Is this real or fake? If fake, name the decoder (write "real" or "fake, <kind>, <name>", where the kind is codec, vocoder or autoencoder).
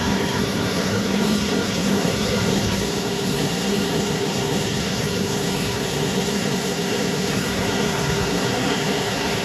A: fake, codec, SNAC